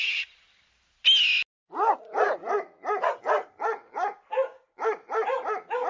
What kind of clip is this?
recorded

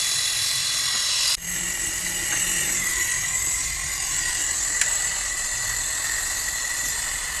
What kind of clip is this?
remade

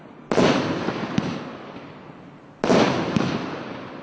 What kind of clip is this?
recorded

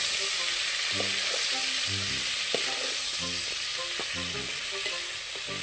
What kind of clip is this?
recorded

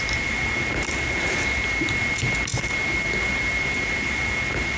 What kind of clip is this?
recorded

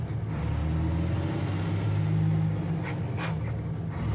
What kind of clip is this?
recorded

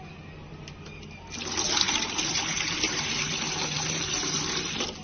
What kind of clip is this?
recorded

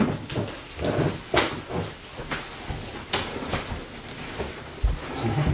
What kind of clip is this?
recorded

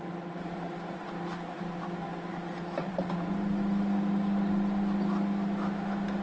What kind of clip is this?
recorded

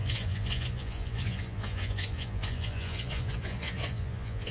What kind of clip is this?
remade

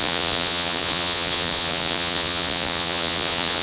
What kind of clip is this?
remade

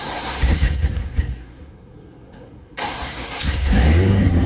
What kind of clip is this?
remade